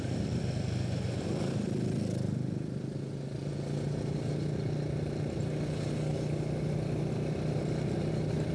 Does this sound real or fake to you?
real